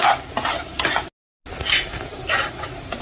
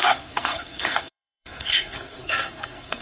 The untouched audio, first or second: first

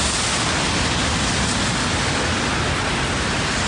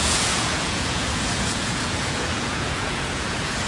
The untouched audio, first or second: first